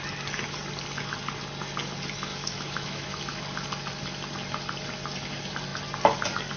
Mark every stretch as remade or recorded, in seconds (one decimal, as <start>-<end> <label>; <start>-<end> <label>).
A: 0.0-2.3 recorded; 2.3-3.4 remade; 3.4-6.6 recorded